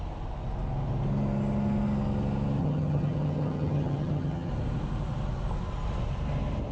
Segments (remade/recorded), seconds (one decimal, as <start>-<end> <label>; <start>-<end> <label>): 0.0-2.6 recorded; 2.6-4.5 remade; 4.5-6.7 recorded